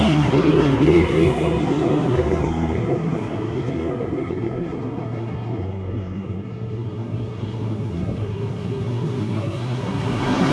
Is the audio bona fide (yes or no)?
no